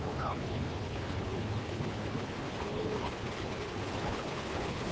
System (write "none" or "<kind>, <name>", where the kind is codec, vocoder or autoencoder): codec, HILCodec